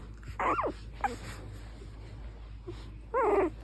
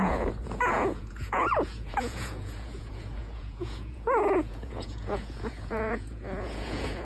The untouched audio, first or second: first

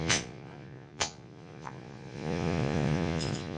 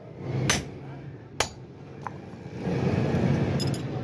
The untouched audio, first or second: second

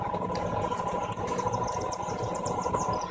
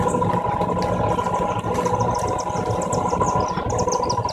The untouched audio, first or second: second